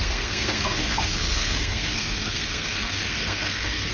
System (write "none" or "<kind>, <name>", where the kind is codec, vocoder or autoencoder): codec, SNAC